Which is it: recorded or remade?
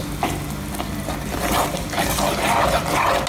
recorded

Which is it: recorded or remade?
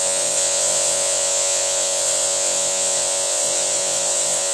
remade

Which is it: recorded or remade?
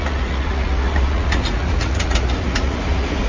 remade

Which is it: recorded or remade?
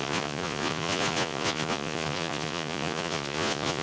remade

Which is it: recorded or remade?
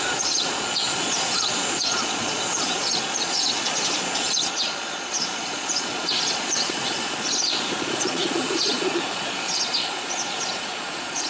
remade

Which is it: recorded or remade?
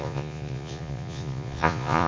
remade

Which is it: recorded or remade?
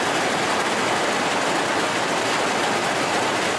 recorded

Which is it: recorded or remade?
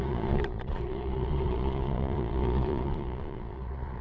remade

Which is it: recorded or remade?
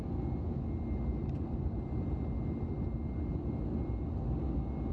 recorded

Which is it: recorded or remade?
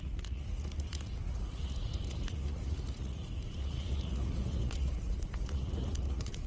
remade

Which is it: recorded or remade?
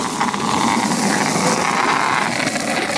recorded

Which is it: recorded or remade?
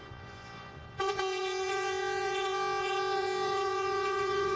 remade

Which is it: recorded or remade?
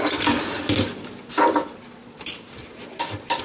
recorded